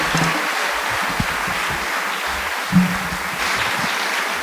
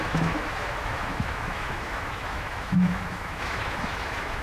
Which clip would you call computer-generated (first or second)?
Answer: second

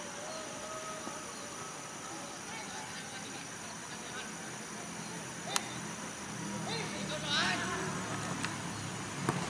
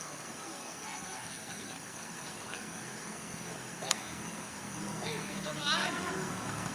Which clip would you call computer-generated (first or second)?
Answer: second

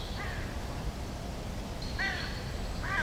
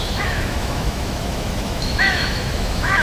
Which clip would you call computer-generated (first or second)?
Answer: second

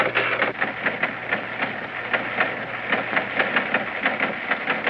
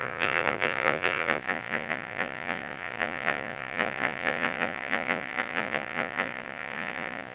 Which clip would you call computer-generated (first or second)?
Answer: second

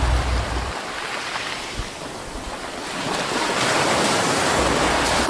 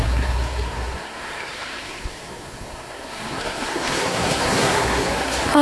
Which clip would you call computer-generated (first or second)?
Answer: second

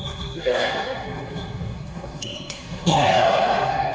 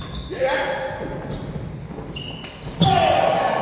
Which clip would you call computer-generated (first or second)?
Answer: first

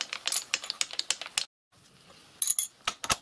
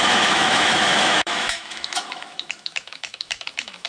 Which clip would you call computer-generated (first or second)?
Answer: second